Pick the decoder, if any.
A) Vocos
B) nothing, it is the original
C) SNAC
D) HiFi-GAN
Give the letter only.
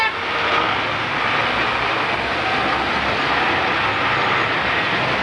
B